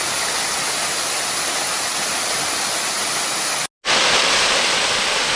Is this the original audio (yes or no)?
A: yes